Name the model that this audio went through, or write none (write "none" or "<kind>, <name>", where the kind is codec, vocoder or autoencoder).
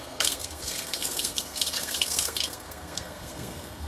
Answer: codec, SNAC